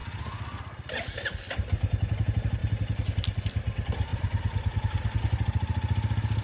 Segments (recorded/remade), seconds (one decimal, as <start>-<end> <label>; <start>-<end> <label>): 0.0-6.4 recorded